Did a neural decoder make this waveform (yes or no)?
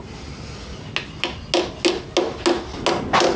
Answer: no